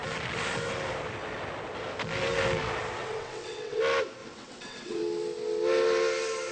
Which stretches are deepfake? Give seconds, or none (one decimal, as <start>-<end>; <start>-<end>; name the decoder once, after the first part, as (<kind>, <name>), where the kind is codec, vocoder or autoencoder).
3.0-3.8 (vocoder, WaveNeXt); 4.2-5.0